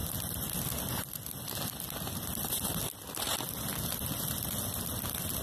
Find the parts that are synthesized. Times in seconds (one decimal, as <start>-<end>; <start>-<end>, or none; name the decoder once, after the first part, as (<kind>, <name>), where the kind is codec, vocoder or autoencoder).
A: none